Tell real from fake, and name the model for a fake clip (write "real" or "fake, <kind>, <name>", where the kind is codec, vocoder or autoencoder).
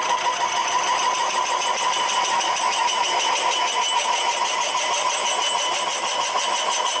real